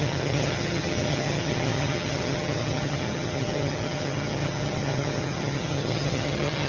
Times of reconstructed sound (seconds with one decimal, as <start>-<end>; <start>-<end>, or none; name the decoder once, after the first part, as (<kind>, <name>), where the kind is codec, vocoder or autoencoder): 0.0-6.7 (vocoder, HiFi-GAN)